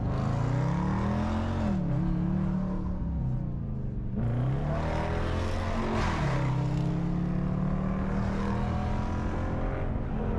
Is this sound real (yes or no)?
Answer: yes